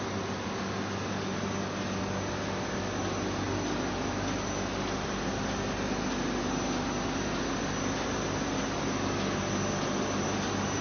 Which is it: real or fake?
real